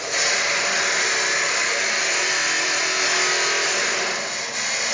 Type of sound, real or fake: real